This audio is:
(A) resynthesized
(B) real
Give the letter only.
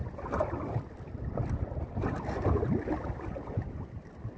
B